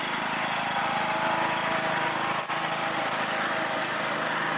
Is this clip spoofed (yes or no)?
no